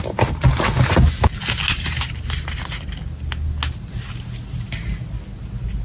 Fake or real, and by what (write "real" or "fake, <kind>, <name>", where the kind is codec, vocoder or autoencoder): real